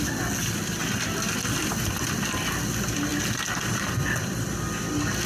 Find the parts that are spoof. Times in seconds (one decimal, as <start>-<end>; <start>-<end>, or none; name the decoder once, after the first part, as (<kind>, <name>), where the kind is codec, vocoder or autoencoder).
none